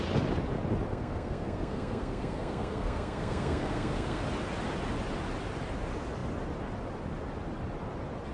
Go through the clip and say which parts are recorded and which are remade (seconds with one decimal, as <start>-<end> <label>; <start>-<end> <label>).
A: 0.0-0.9 recorded; 0.9-4.2 remade; 4.2-8.3 recorded